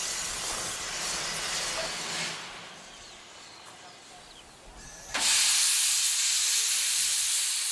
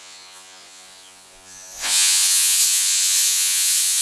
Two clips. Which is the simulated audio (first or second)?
second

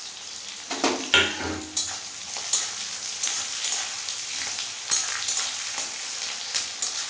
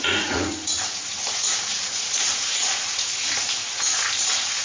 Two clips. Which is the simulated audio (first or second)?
second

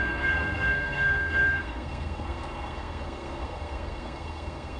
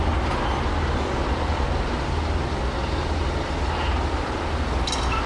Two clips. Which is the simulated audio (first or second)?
first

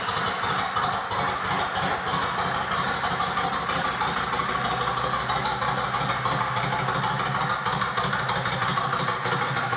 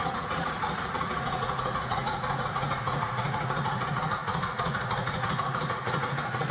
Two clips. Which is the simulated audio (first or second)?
second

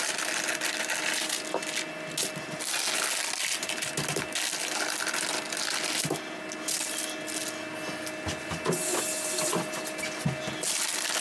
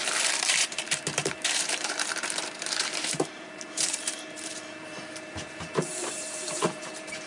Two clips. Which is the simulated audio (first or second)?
second